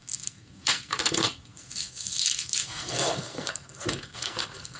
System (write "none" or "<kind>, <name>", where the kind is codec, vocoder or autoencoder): codec, SNAC